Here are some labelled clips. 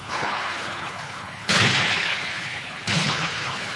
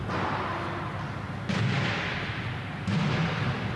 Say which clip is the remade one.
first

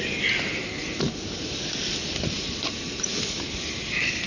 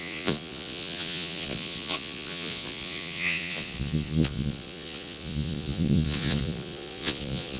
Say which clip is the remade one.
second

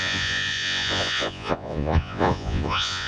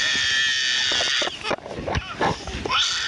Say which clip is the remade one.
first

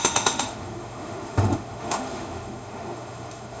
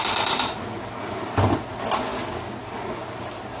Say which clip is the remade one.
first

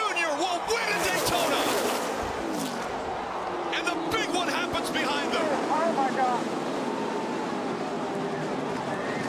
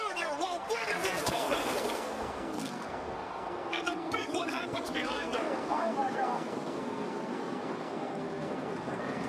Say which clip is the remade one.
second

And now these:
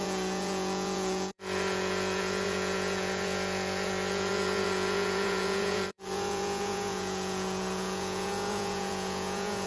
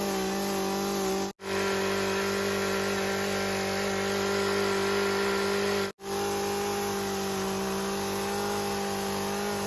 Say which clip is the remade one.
first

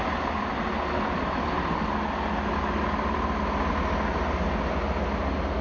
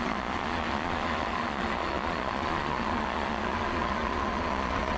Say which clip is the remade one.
second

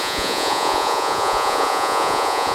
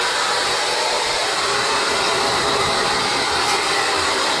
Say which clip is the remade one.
first